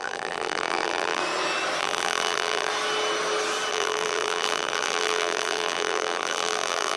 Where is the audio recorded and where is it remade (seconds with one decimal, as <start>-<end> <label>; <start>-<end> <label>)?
0.0-1.2 remade; 1.2-1.8 recorded; 1.8-2.7 remade; 2.7-3.7 recorded; 3.7-7.0 remade